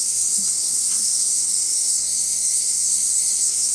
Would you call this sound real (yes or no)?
no